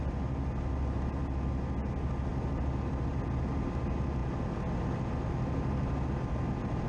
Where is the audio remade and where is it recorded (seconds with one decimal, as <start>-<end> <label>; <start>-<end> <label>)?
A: 0.0-6.9 recorded